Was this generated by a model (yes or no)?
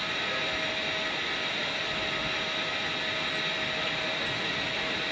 no